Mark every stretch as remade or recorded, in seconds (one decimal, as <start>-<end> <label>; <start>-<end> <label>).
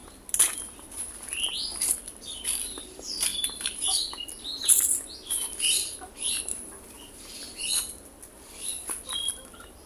0.0-0.8 recorded; 0.8-3.3 remade; 3.3-5.3 recorded; 5.3-9.9 remade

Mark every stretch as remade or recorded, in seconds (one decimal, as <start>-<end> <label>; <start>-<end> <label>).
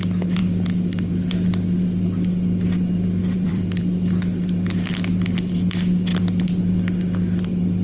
0.0-3.2 recorded; 3.2-3.8 remade; 3.8-7.8 recorded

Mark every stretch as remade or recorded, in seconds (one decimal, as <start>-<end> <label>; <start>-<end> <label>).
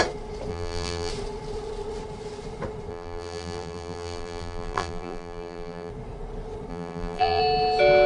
0.0-0.5 recorded; 0.5-1.1 remade; 1.1-2.9 recorded; 2.9-5.9 remade; 5.9-6.7 recorded; 6.7-7.4 remade; 7.4-8.1 recorded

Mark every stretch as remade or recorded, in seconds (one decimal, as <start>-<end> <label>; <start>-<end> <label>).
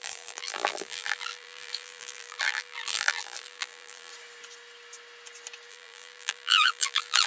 0.0-4.1 remade; 4.1-5.7 recorded; 5.7-7.3 remade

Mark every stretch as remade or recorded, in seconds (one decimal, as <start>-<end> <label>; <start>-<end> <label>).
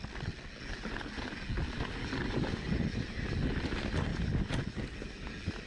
0.0-5.7 recorded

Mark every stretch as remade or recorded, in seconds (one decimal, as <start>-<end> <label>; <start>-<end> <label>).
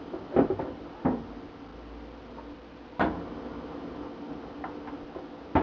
0.0-5.6 recorded